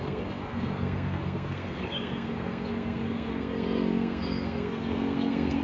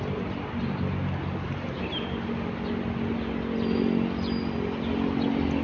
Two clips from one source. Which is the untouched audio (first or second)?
second